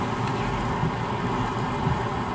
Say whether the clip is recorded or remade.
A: recorded